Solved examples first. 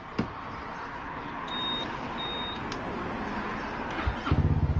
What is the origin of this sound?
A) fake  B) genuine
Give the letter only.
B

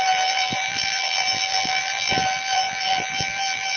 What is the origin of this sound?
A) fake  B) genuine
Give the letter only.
A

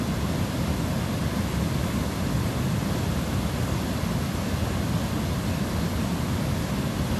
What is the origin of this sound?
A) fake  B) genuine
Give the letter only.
B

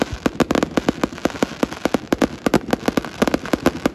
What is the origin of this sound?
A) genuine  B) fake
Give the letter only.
A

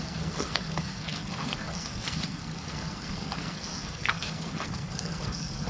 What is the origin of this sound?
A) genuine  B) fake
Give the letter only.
B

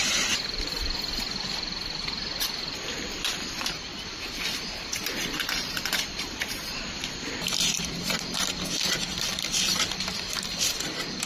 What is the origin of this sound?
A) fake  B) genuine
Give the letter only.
A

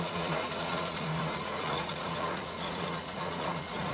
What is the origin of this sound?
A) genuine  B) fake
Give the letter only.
B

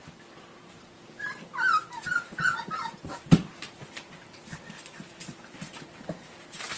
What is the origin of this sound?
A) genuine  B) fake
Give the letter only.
B